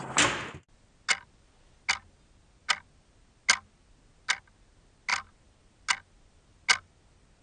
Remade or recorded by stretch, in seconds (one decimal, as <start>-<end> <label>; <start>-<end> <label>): 0.0-7.4 recorded